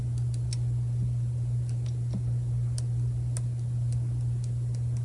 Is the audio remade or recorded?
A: recorded